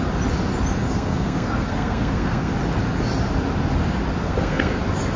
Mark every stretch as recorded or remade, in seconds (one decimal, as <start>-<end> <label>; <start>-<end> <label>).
0.0-0.8 recorded; 0.8-2.5 remade; 2.5-4.2 recorded; 4.2-4.8 remade; 4.8-5.2 recorded